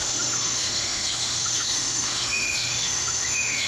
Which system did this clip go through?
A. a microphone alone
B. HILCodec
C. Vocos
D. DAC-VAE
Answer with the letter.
D